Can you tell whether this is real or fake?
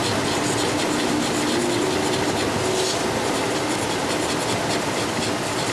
real